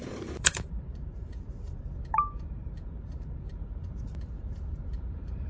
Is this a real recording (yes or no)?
no